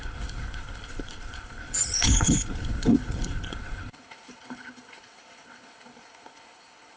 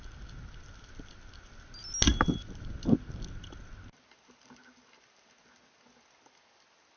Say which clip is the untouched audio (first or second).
second